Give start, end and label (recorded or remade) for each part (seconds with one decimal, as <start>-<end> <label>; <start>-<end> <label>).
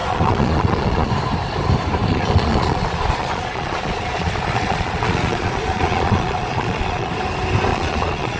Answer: 0.0-1.1 remade; 1.1-2.1 recorded; 2.1-7.1 remade; 7.1-7.7 recorded; 7.7-8.4 remade